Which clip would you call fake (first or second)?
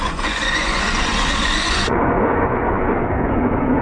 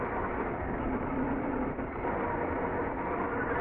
first